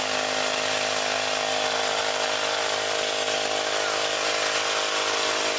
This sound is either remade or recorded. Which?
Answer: recorded